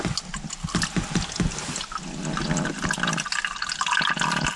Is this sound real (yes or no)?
yes